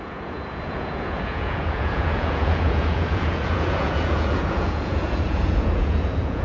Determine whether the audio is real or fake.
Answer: fake